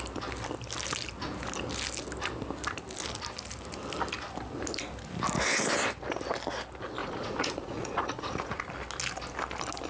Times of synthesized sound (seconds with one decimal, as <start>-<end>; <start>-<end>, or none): 7.0-8.6